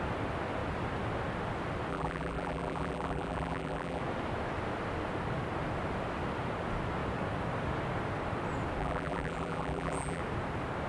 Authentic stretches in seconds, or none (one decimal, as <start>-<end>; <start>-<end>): 0.0-1.9; 4.0-8.8; 10.2-10.9